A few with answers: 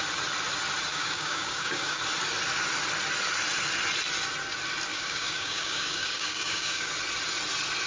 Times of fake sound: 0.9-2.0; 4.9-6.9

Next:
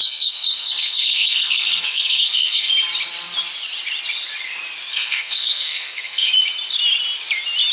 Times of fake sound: 0.0-2.7; 4.9-6.3

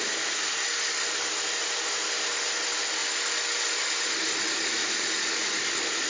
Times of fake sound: 4.8-6.1

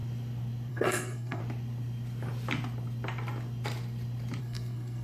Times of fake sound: 0.7-1.4; 4.4-5.0